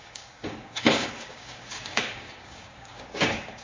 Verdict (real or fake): fake